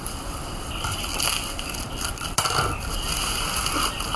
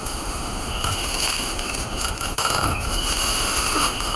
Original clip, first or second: first